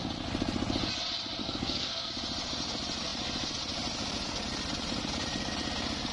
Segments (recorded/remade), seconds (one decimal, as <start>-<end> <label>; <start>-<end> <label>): 0.0-1.4 recorded; 1.4-2.1 remade; 2.1-6.1 recorded